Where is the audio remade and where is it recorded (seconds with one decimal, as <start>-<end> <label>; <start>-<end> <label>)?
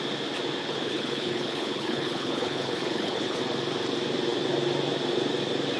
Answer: 0.0-0.6 recorded; 0.6-3.4 remade; 3.4-5.8 recorded